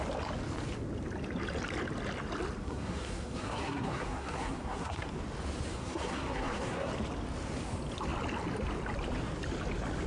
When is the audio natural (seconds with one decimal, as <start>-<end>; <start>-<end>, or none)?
0.0-2.6; 5.1-5.7; 6.9-10.1